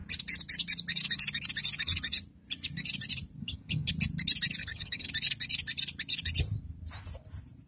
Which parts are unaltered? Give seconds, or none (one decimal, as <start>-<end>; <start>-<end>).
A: 0.0-3.4; 3.9-4.6; 5.1-7.7